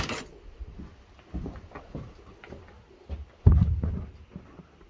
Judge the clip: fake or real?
real